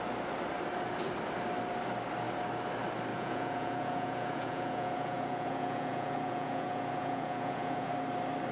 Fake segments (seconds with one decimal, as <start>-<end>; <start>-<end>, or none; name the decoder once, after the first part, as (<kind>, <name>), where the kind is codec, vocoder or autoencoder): 3.1-7.9 (vocoder, Vocos)